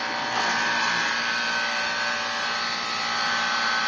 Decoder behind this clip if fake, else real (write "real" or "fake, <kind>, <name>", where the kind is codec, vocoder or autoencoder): real